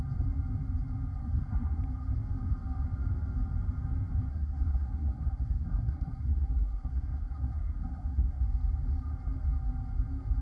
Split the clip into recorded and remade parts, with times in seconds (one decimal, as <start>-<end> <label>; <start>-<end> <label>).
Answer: 0.0-1.2 recorded; 1.2-1.8 remade; 1.8-4.3 recorded; 4.3-8.4 remade; 8.4-10.4 recorded

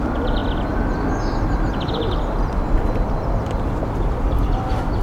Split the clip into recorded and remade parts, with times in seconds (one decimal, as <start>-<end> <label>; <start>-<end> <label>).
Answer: 0.0-5.0 recorded